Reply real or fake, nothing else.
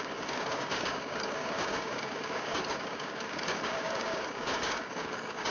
fake